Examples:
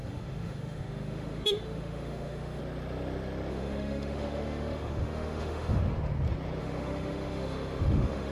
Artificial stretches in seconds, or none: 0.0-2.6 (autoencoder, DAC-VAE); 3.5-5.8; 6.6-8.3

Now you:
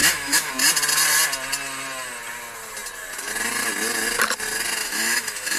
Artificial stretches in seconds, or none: 0.0-0.5 (autoencoder, DAC-VAE); 4.8-5.6

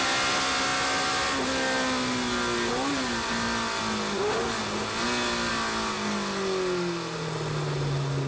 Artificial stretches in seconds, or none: none

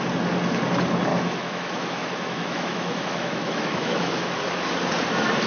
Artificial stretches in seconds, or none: 1.1-4.4 (autoencoder, DAC-VAE)

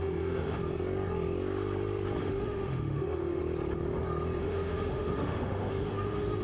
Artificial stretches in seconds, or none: 0.0-0.6 (autoencoder, DAC-VAE); 2.2-3.4; 4.4-6.4